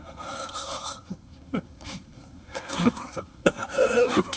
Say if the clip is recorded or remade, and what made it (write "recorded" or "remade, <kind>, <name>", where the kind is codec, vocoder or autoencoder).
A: remade, codec, SNAC